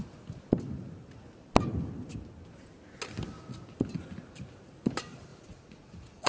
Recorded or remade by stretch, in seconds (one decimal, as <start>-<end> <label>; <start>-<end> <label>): 0.0-5.3 recorded; 5.3-6.3 remade